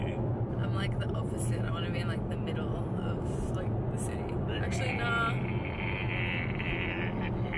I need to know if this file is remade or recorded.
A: recorded